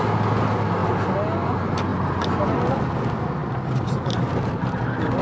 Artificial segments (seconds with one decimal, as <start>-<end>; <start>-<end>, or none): none